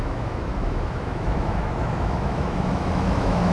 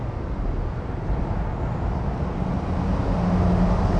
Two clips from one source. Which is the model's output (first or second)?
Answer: first